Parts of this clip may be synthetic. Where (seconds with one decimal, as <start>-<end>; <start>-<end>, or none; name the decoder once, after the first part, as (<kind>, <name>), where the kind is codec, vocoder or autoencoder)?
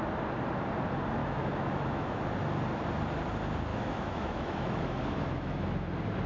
1.2-2.2 (autoencoder, DAC-VAE); 3.7-5.6